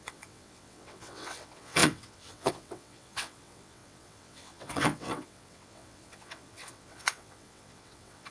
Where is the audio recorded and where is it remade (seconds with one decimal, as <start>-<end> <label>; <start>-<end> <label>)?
0.0-8.3 remade

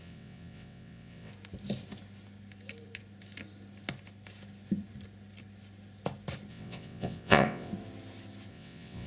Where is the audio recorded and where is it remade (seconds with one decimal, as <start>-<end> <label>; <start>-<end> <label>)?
0.0-1.3 remade; 1.3-6.5 recorded; 6.5-7.7 remade; 7.7-8.5 recorded; 8.5-9.1 remade